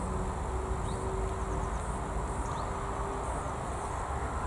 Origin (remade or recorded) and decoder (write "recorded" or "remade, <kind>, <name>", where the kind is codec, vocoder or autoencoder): recorded